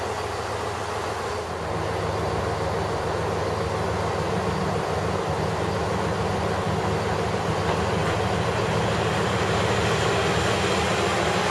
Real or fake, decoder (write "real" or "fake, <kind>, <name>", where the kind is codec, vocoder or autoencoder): real